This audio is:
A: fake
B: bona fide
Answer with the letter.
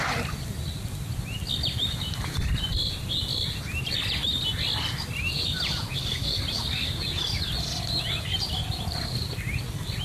B